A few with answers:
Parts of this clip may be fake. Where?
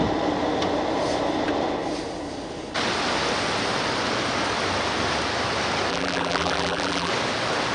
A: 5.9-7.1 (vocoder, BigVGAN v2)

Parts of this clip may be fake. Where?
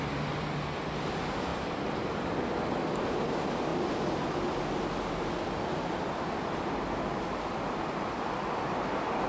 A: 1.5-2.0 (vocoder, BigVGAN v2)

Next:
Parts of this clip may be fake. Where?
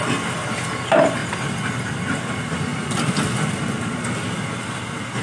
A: 2.7-3.6 (vocoder, BigVGAN v2)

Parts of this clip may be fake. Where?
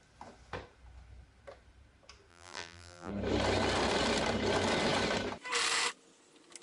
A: 2.3-3.1 (vocoder, BigVGAN v2)